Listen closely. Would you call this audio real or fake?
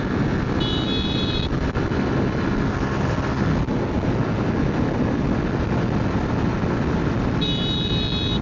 real